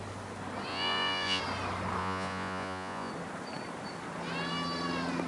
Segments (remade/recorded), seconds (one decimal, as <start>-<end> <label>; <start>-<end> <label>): 0.0-0.7 recorded; 0.7-1.4 remade; 1.4-2.0 recorded; 2.0-3.1 remade; 3.1-5.3 recorded